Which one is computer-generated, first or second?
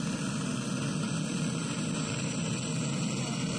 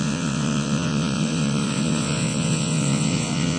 second